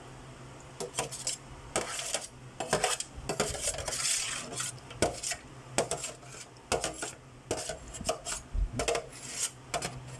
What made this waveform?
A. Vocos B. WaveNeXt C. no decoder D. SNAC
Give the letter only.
C